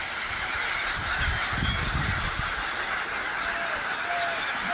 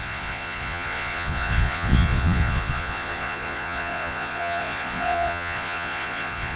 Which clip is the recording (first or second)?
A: first